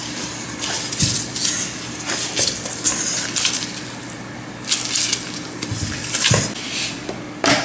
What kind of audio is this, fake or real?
real